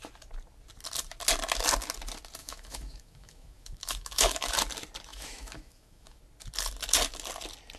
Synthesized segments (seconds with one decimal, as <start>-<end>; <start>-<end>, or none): 2.4-4.5; 5.1-6.2